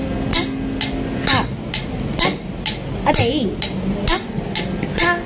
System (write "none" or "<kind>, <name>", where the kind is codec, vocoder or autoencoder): none